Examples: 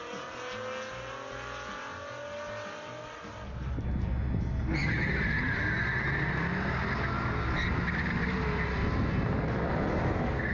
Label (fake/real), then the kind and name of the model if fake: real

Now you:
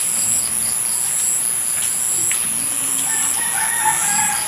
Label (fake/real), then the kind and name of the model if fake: real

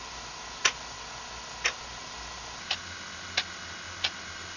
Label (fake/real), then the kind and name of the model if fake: real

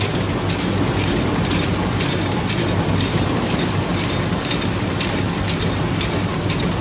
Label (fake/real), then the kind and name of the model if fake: real